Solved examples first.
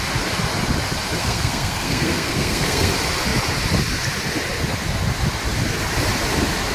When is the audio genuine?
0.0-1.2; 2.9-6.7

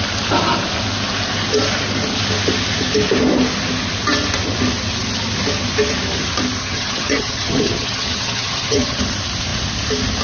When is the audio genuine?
0.0-6.6; 9.0-10.2

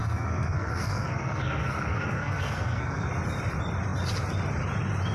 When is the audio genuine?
3.1-5.1

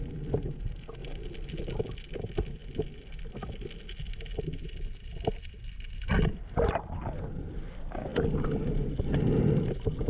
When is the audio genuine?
0.0-10.1